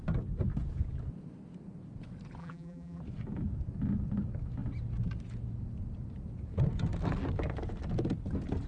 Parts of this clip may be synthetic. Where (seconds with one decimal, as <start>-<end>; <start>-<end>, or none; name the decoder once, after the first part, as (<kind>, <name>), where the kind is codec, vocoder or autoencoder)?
2.4-3.0 (vocoder, BigVGAN v2)